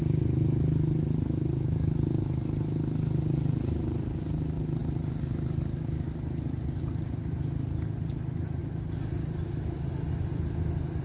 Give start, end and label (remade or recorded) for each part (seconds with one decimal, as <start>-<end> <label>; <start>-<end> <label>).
0.0-11.0 recorded